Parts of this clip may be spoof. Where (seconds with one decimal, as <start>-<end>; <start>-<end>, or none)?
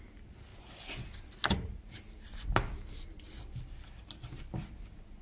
none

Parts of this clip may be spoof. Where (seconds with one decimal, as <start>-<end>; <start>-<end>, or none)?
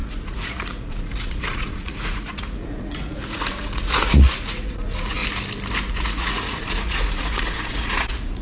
0.0-5.2; 5.9-8.4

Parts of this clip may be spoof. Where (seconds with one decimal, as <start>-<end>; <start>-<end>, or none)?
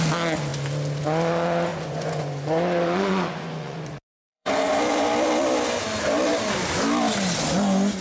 1.7-4.7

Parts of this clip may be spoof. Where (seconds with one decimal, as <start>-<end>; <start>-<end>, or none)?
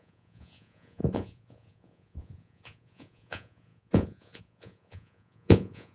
0.0-5.9